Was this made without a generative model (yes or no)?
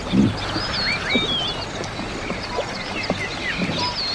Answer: yes